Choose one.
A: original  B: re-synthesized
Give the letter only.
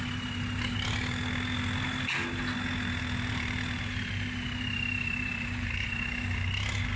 A